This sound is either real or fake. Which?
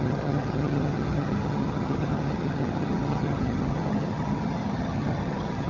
fake